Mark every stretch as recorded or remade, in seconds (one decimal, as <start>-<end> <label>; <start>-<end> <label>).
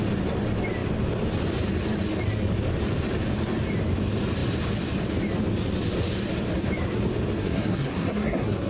0.0-7.4 recorded; 7.4-8.7 remade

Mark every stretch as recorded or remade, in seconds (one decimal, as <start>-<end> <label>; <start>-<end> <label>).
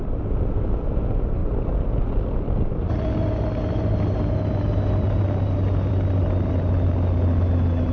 0.0-7.9 recorded